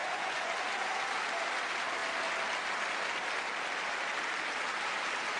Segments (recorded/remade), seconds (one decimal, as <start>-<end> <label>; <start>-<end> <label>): 0.0-0.5 remade; 0.5-5.4 recorded